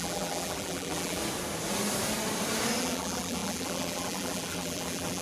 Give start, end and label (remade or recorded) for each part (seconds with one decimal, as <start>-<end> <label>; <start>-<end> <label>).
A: 0.0-1.2 remade; 1.2-2.8 recorded; 2.8-5.2 remade